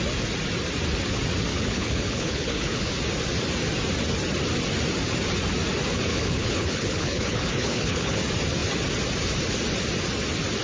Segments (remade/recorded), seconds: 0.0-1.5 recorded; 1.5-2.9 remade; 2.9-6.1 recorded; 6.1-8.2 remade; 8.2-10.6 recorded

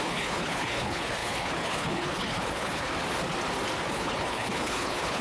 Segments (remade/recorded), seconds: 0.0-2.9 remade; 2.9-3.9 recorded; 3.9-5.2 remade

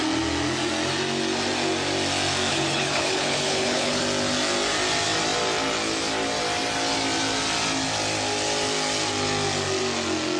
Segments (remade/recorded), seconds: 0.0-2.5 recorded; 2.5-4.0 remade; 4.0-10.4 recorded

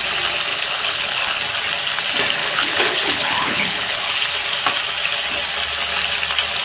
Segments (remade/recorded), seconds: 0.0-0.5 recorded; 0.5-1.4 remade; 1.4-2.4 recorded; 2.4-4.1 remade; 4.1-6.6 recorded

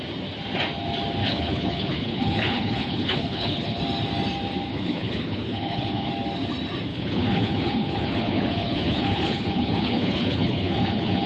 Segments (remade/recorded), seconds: 0.0-1.2 recorded; 1.2-3.8 remade; 3.8-4.7 recorded; 4.7-6.1 remade; 6.1-6.9 recorded; 6.9-11.3 remade

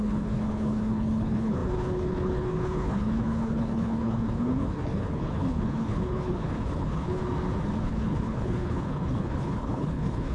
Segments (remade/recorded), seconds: 0.0-7.2 remade; 7.2-7.8 recorded; 7.8-10.3 remade

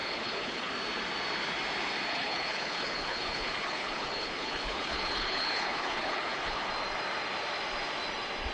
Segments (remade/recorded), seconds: 0.0-0.7 remade; 0.7-2.1 recorded; 2.1-6.7 remade; 6.7-8.5 recorded